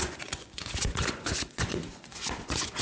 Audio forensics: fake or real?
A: fake